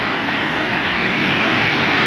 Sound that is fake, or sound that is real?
fake